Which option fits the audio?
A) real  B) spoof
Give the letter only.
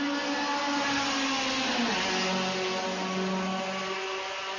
A